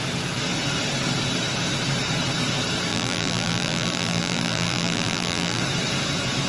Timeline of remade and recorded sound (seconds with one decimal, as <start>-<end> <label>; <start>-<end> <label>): 0.0-2.9 recorded; 2.9-5.6 remade; 5.6-6.5 recorded